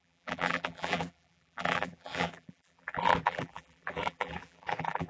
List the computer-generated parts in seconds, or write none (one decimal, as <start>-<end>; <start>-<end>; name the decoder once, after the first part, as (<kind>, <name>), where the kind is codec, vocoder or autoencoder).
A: 0.0-5.1 (vocoder, BigVGAN v2)